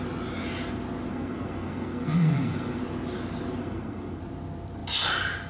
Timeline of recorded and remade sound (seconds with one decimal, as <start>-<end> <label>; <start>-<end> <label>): 0.0-1.1 recorded; 1.1-2.8 remade; 2.8-3.6 recorded; 3.6-4.2 remade; 4.2-5.5 recorded